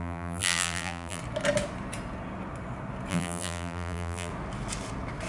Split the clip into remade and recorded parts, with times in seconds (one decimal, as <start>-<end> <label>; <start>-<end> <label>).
0.0-1.2 remade; 1.2-3.1 recorded; 3.1-4.3 remade; 4.3-5.3 recorded